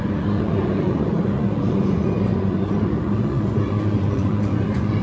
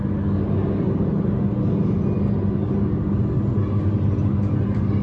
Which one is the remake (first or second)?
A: first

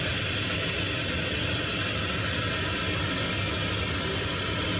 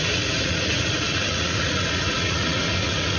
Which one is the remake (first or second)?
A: second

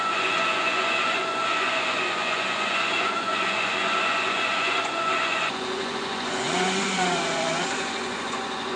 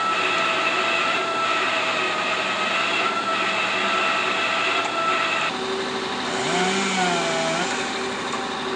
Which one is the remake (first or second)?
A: first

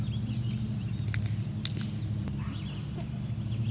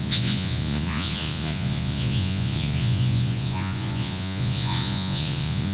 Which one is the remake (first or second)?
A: second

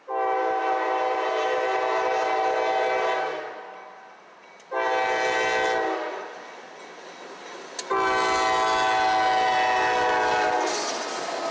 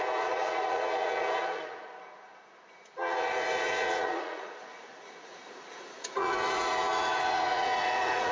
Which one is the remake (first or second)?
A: second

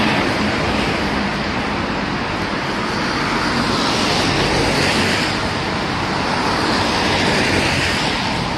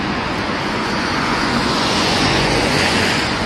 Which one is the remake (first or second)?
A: second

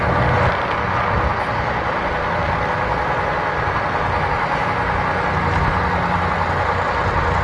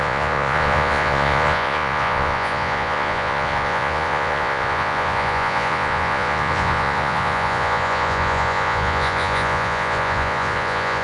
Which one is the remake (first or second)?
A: second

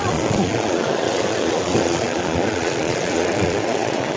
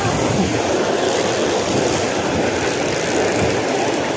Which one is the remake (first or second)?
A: first